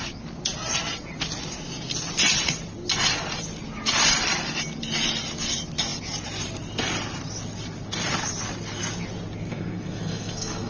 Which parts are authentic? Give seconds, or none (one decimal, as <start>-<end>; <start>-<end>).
0.0-9.5